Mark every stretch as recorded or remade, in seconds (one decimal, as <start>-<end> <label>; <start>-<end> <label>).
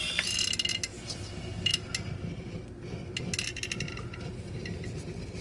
0.0-5.4 recorded